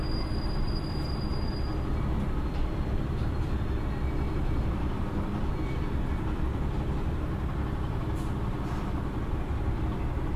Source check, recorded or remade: remade